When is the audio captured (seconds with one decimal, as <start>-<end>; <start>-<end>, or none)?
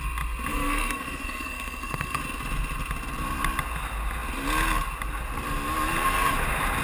0.0-0.5; 2.2-6.8